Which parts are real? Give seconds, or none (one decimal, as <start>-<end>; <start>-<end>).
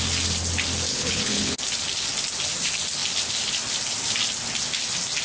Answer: 0.0-0.9; 1.6-5.2